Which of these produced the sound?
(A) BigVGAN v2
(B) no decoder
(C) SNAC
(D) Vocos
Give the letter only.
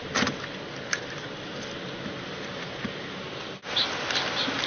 B